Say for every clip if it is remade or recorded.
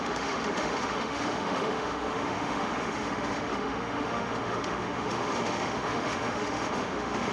remade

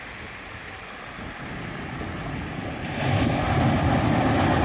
recorded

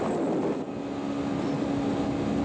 recorded